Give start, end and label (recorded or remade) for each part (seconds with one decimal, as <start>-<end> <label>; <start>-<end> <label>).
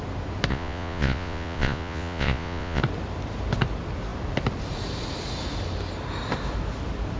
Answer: 0.0-0.5 recorded; 0.5-2.8 remade; 2.8-7.2 recorded